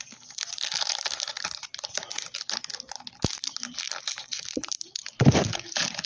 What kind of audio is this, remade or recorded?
recorded